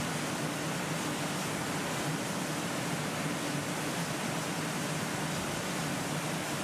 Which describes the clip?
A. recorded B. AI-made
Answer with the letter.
A